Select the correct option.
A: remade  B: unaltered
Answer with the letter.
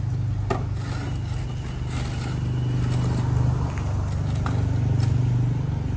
B